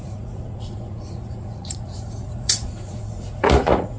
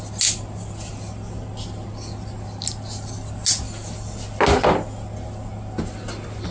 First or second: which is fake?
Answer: first